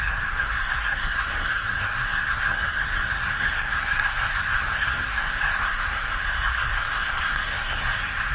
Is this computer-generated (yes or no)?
yes